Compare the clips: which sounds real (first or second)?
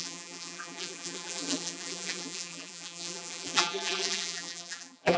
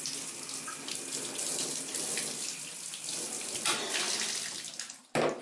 second